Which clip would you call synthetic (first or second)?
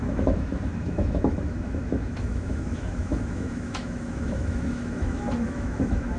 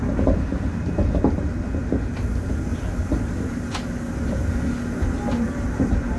first